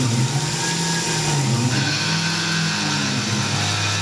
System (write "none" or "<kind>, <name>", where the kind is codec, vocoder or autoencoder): none